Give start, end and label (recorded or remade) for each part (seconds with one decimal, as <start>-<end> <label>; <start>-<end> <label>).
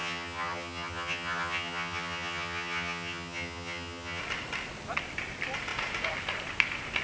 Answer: 0.0-4.2 remade; 4.2-7.0 recorded